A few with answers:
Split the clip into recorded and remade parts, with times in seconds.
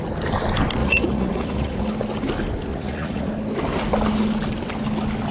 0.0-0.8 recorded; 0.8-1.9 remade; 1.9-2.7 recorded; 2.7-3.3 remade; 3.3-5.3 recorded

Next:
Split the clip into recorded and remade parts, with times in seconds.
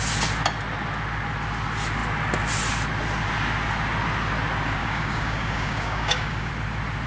0.0-4.8 recorded; 4.8-6.5 remade; 6.5-7.1 recorded